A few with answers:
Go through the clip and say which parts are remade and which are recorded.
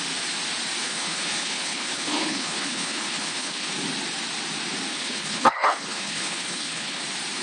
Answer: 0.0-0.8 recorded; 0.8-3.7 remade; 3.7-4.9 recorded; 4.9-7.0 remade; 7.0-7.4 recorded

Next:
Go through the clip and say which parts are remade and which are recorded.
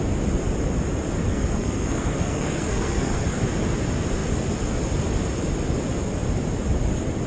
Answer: 0.0-1.2 recorded; 1.2-3.4 remade; 3.4-7.3 recorded